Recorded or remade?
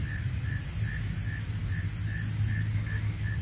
recorded